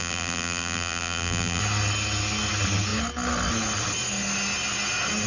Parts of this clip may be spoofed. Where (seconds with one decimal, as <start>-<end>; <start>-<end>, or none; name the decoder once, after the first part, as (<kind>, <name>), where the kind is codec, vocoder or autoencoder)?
0.0-1.6 (vocoder, BigVGAN v2)